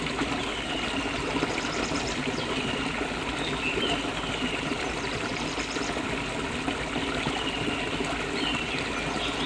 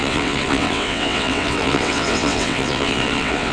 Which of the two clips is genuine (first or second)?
first